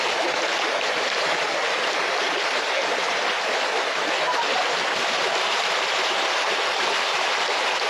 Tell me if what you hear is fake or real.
fake